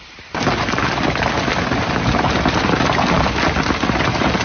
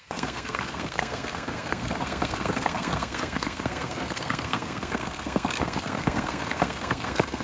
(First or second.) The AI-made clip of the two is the second